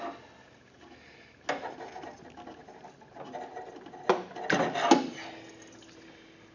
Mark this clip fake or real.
real